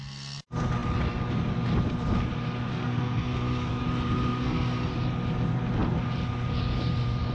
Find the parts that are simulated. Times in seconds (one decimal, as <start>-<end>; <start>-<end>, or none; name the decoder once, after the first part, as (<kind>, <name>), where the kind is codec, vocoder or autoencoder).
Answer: 2.7-3.7 (codec, SNAC); 4.3-4.9